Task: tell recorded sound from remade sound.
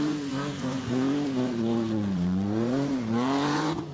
remade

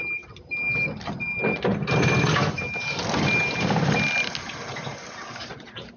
recorded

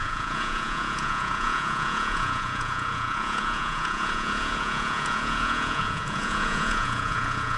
remade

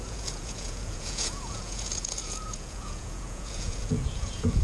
remade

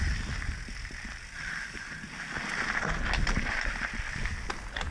recorded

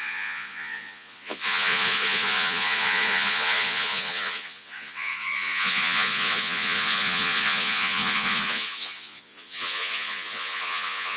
remade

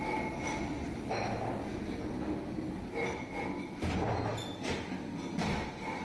recorded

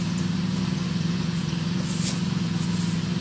remade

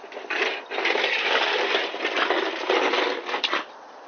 recorded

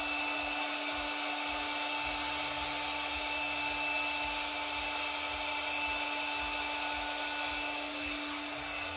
recorded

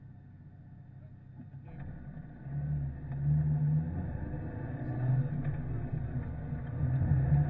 recorded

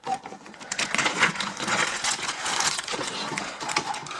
remade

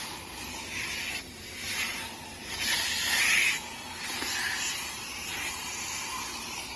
recorded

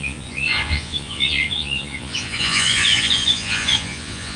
remade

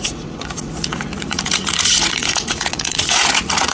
remade